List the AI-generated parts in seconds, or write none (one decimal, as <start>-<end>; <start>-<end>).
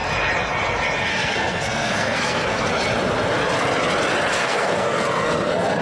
1.1-2.7; 4.3-5.8